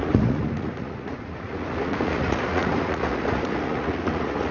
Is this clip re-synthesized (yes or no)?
yes